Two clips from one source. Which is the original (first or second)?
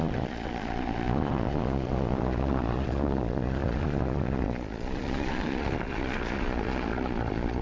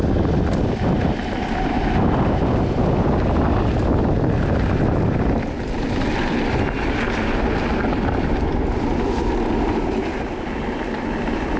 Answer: second